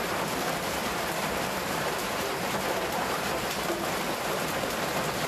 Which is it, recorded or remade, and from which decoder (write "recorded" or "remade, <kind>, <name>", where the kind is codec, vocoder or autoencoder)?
remade, vocoder, BigVGAN v2